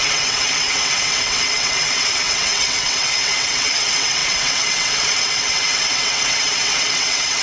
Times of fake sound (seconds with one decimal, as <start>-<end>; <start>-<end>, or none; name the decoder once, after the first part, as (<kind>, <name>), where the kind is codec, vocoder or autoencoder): 0.0-7.4 (vocoder, WaveNeXt)